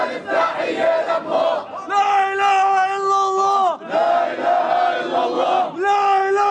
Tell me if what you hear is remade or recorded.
recorded